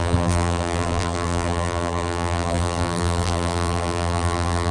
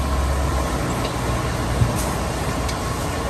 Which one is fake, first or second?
first